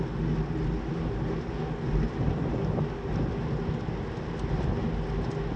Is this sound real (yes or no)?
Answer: yes